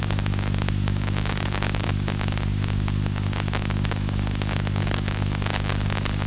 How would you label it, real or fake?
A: fake